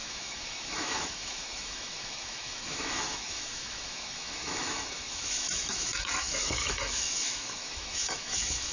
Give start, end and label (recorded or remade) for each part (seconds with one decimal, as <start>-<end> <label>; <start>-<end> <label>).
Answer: 0.0-8.7 remade